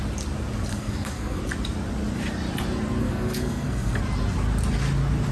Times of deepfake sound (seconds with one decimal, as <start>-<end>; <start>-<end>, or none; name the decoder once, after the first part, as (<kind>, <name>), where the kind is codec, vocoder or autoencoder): 0.7-1.4 (codec, SNAC); 3.0-4.0